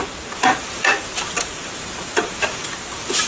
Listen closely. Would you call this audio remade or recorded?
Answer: remade